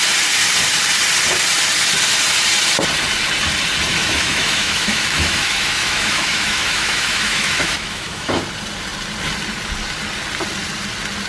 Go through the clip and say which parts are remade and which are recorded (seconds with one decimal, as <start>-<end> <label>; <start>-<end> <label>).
0.0-3.9 recorded; 3.9-8.4 remade; 8.4-11.3 recorded